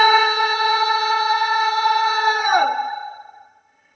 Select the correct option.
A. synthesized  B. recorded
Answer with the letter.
A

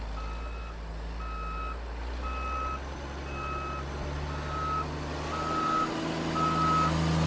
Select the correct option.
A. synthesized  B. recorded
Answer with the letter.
B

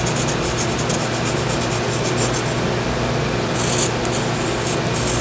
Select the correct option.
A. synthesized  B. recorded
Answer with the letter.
B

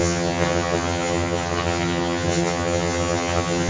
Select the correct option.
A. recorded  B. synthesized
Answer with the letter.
B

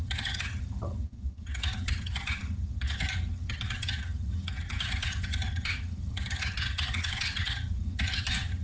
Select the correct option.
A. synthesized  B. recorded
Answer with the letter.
A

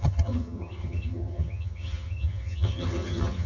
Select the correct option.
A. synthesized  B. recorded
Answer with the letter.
A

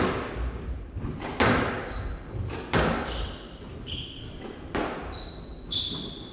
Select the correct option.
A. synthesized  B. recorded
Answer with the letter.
B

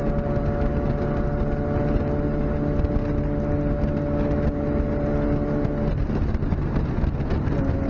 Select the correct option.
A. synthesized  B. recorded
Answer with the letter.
B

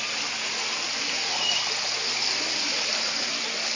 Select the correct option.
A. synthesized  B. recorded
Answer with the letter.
B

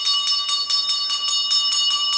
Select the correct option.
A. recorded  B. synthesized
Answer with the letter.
A